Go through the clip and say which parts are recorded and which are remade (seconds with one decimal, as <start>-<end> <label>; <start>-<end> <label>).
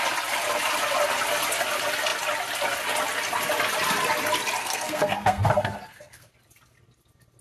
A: 0.0-4.6 recorded; 4.6-6.3 remade; 6.3-7.4 recorded